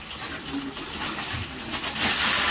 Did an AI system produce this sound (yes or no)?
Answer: no